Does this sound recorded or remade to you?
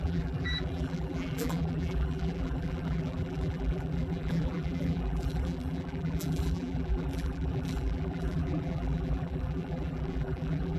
remade